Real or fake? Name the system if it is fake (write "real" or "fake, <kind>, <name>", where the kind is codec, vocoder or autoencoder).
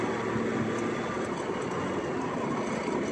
real